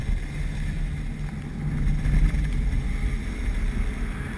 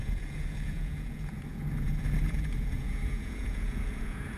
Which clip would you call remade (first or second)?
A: second